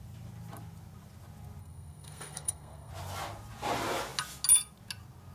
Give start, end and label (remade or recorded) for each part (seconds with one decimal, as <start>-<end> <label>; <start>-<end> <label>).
0.0-1.6 recorded; 1.6-2.9 remade; 2.9-5.3 recorded